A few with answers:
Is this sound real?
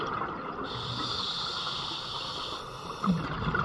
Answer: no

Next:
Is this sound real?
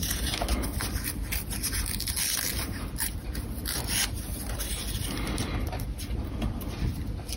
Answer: yes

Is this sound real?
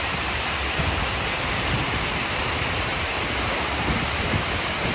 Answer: no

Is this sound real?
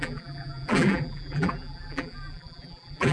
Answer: no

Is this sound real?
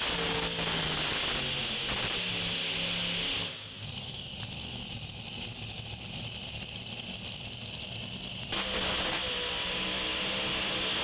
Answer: yes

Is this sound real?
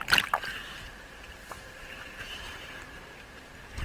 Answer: no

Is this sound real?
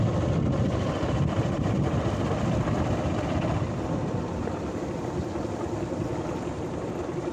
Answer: yes